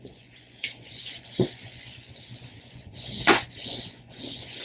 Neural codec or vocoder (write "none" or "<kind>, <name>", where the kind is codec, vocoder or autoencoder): vocoder, Vocos